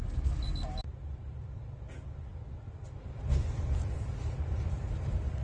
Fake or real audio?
real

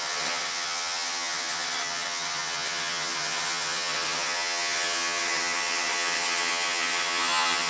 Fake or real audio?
fake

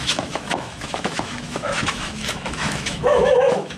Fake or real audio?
fake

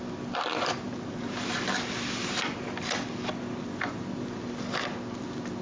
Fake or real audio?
real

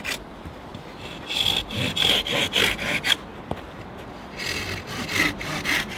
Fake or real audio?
real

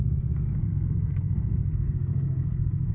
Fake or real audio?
fake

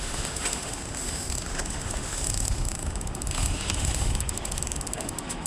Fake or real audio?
fake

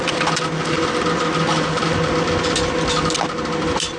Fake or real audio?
real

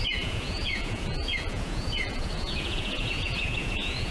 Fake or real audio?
fake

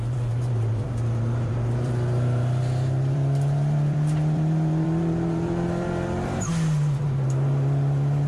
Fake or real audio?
fake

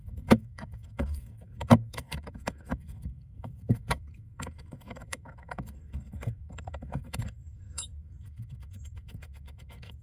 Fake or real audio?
fake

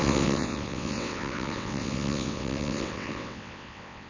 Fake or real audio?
fake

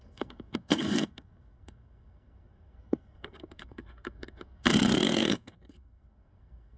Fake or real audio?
fake